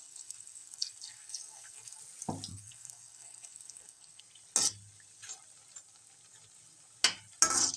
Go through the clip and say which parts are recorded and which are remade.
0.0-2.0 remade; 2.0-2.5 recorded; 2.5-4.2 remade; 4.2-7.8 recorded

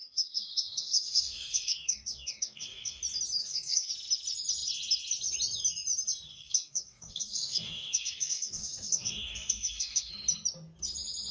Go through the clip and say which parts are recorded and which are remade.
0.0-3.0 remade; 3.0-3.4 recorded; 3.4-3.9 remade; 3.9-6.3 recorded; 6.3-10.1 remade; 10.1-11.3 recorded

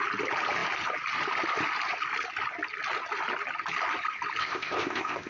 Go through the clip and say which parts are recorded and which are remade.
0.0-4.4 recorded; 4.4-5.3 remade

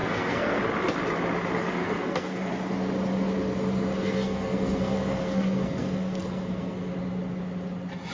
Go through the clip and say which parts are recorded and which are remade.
0.0-0.6 remade; 0.6-1.8 recorded; 1.8-2.5 remade; 2.5-4.0 recorded; 4.0-6.9 remade; 6.9-8.1 recorded

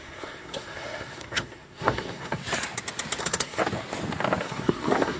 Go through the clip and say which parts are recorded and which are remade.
0.0-2.4 remade; 2.4-3.2 recorded; 3.2-3.6 remade; 3.6-4.4 recorded; 4.4-5.2 remade

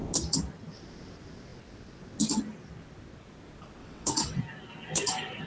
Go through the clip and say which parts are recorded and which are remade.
0.0-3.8 recorded; 3.8-4.4 remade; 4.4-5.5 recorded

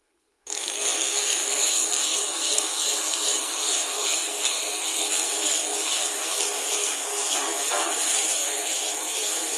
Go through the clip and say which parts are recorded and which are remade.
0.0-9.6 remade

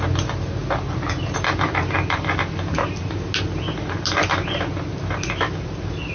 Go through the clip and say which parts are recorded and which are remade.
0.0-6.1 recorded